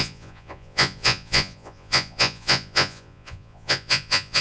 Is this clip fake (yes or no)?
yes